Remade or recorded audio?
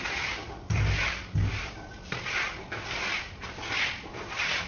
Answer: recorded